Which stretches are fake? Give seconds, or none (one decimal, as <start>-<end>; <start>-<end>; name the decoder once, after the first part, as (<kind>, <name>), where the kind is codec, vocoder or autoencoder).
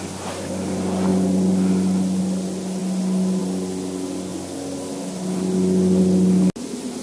none